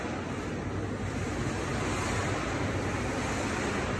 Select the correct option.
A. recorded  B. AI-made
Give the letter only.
A